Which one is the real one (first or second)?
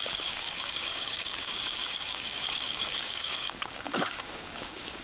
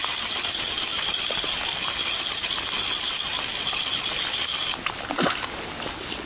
second